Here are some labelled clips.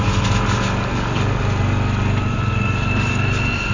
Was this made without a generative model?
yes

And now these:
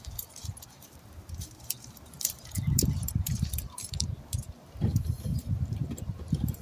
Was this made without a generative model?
no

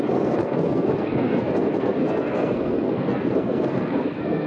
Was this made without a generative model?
no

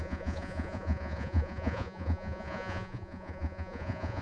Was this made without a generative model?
no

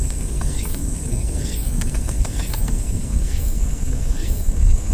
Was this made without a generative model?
no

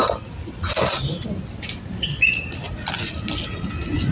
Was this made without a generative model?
yes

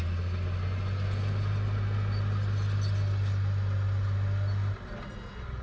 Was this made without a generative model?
yes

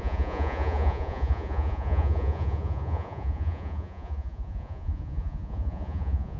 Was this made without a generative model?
no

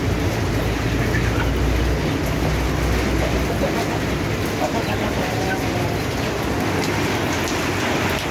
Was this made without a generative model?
yes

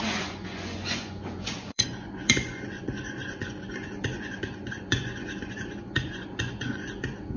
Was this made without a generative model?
no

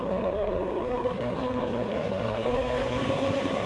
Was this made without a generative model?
no